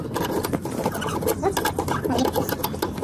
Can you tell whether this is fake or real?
real